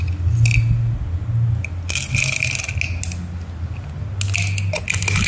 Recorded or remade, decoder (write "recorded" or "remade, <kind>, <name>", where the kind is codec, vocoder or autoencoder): recorded